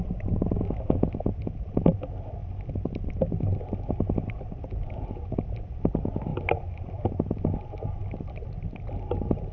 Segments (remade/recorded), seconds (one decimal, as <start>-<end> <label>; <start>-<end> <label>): 0.0-9.5 recorded